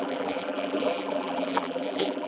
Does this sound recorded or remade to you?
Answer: remade